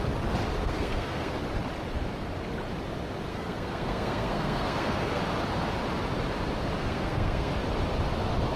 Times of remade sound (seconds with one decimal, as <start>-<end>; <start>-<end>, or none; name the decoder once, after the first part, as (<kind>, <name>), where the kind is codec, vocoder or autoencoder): 0.6-1.4 (codec, SNAC); 3.3-5.2; 6.8-7.5